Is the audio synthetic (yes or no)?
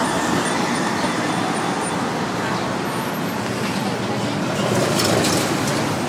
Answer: no